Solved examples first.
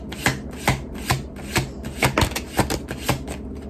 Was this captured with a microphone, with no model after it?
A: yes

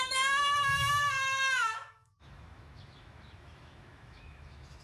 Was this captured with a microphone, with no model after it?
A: no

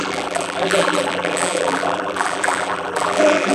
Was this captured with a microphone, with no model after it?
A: no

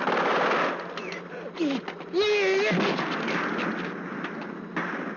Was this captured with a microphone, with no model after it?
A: yes